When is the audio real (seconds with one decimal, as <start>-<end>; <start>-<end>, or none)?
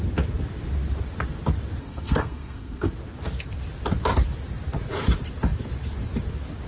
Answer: 0.0-1.8; 2.9-6.7